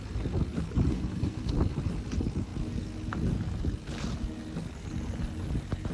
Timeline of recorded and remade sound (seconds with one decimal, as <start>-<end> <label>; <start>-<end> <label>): 0.0-0.9 recorded; 0.9-1.5 remade; 1.5-5.9 recorded